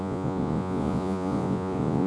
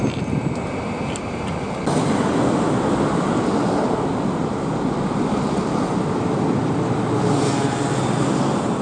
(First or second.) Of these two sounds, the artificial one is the first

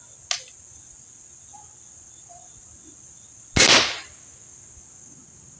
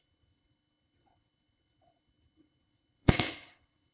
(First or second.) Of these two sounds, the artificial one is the second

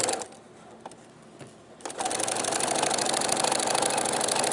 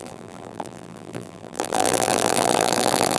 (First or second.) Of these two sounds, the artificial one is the second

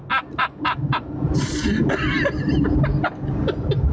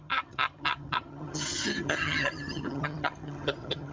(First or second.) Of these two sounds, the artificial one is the second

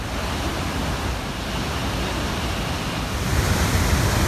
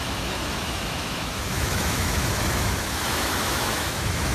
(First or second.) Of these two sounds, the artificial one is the second